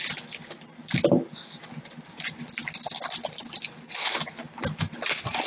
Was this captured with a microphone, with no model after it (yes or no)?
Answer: yes